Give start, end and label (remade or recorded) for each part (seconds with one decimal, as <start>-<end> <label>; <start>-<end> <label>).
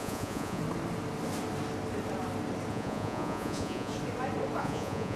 0.0-0.6 remade; 0.6-2.7 recorded; 2.7-3.9 remade; 3.9-4.6 recorded; 4.6-5.2 remade